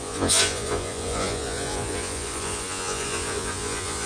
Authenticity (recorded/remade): remade